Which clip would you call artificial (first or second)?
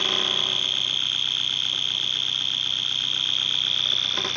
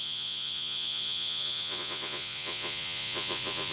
second